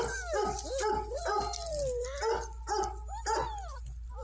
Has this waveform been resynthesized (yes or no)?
no